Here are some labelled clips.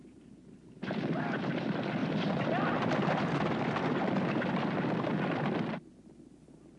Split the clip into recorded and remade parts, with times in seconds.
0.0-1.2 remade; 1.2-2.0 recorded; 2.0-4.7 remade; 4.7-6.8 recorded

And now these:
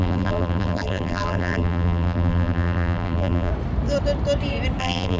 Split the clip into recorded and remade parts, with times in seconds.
0.0-3.5 remade; 3.5-4.8 recorded; 4.8-5.2 remade

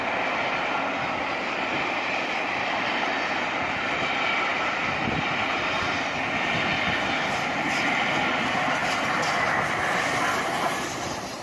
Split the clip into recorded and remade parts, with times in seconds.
0.0-6.7 remade; 6.7-7.3 recorded; 7.3-8.8 remade; 8.8-9.8 recorded; 9.8-11.4 remade

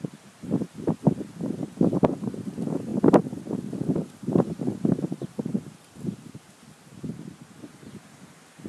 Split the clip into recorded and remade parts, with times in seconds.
0.0-8.7 recorded

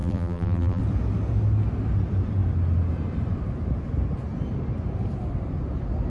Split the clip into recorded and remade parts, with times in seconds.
0.0-0.8 remade; 0.8-6.1 recorded